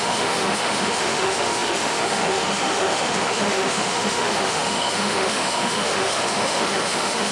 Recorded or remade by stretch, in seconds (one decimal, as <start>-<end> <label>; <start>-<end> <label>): 0.0-7.3 remade